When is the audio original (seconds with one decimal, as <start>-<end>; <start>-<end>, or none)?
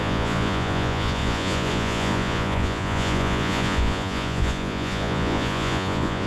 none